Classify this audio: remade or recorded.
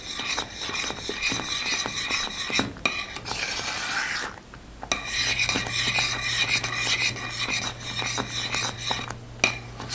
recorded